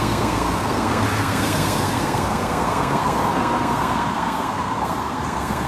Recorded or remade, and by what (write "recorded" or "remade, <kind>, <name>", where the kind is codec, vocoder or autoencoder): remade, codec, SNAC